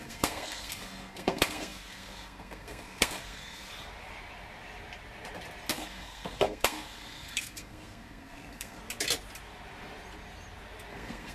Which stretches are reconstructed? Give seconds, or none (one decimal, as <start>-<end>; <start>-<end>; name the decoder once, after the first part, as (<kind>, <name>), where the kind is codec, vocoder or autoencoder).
0.0-3.7 (codec, SNAC); 5.7-8.8; 10.9-11.3